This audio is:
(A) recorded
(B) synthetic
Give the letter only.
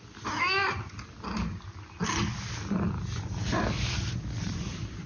A